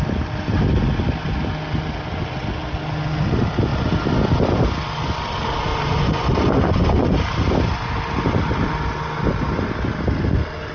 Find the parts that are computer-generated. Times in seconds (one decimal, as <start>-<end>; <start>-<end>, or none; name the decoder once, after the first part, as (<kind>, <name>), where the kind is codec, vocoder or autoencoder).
5.7-7.2 (vocoder, Vocos)